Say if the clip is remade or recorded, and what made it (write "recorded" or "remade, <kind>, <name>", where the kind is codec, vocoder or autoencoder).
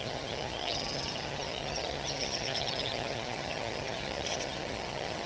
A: remade, vocoder, HiFi-GAN